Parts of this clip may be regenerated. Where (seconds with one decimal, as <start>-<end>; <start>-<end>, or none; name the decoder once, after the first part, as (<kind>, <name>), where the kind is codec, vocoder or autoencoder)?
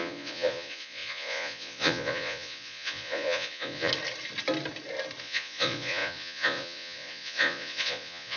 0.0-3.9 (vocoder, Vocos); 5.2-8.4